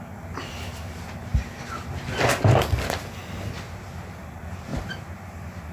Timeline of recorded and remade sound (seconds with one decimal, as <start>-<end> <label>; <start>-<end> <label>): 0.0-5.7 recorded